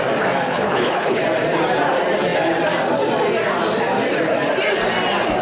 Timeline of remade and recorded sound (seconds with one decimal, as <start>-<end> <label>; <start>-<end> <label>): 0.0-0.5 recorded; 0.5-1.2 remade; 1.2-5.4 recorded